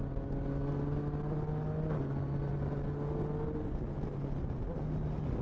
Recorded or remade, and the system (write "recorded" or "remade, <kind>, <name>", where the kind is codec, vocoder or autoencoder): recorded